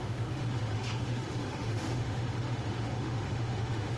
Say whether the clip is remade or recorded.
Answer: remade